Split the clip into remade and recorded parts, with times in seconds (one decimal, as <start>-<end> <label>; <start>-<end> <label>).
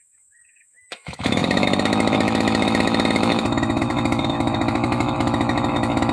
0.0-6.1 remade